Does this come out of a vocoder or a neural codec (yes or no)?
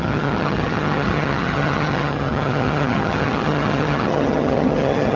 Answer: yes